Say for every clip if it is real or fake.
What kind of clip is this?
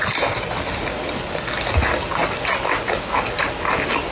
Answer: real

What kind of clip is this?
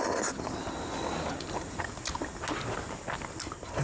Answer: real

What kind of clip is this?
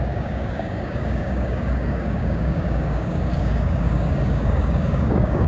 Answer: fake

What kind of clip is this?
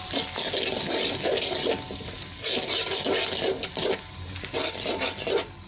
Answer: real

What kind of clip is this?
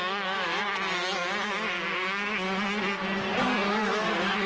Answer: real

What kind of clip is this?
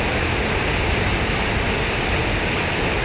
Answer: real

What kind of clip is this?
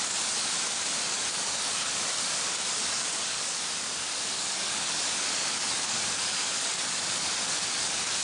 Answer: fake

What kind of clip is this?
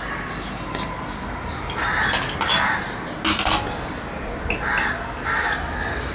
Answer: real